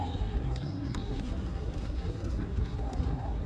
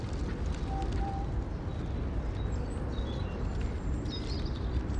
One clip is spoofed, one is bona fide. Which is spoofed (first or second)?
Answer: first